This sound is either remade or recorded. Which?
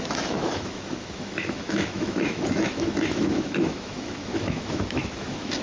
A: remade